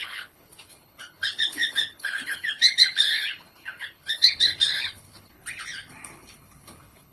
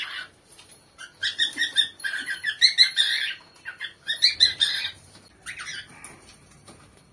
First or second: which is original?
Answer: second